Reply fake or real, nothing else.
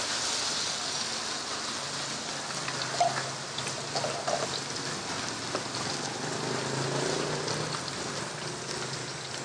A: real